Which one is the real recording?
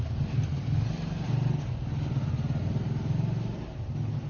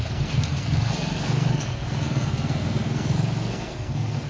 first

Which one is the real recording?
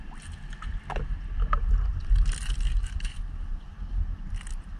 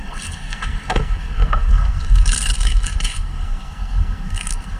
first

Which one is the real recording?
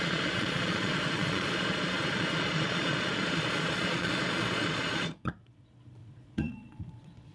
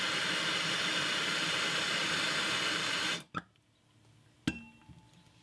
second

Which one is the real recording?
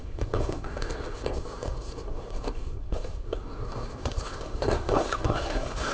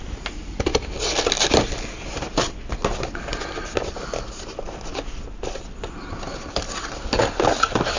second